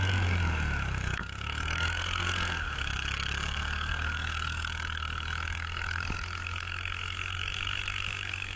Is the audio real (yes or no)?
no